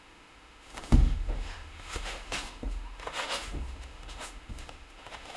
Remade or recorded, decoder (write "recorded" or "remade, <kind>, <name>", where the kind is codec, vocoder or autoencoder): remade, autoencoder, DAC-VAE